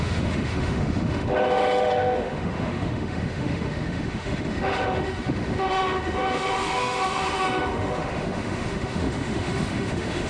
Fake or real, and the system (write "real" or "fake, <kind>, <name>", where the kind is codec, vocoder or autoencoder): fake, autoencoder, DAC-VAE